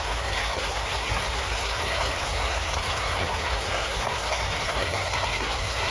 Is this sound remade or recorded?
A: remade